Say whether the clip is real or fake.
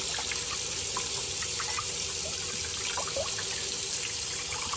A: real